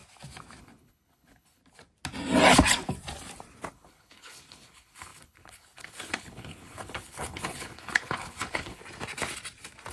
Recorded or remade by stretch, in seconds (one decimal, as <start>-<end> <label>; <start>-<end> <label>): 0.0-0.6 recorded; 0.6-1.6 remade; 1.6-3.7 recorded; 3.7-8.8 remade; 8.8-9.9 recorded